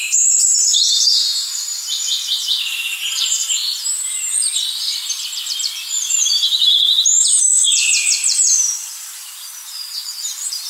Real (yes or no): no